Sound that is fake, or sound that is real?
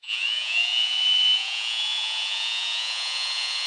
fake